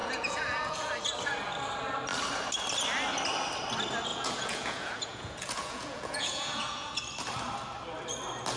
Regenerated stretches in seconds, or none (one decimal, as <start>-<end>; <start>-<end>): 0.0-0.9; 4.1-7.0